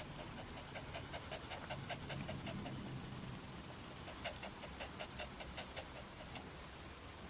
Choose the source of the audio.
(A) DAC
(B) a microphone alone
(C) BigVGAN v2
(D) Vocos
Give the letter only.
B